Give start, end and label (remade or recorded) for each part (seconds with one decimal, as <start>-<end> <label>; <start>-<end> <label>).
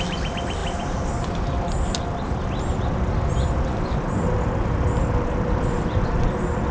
0.0-6.7 recorded